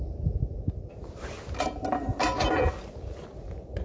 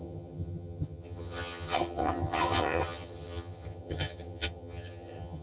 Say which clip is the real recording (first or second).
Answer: first